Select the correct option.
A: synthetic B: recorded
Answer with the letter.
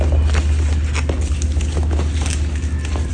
B